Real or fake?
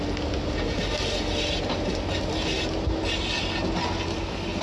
real